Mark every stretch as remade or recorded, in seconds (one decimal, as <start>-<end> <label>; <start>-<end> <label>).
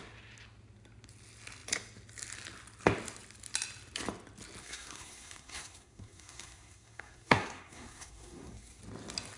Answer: 0.0-4.6 recorded; 4.6-8.8 remade; 8.8-9.4 recorded